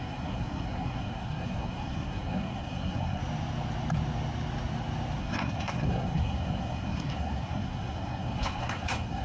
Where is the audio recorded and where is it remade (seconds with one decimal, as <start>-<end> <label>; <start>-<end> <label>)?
0.0-3.2 remade; 3.2-5.2 recorded; 5.2-9.2 remade